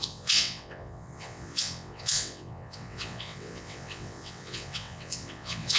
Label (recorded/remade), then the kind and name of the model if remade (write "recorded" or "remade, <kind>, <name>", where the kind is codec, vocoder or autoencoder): remade, vocoder, WaveNeXt